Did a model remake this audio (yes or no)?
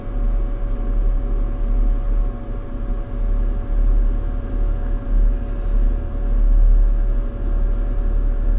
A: no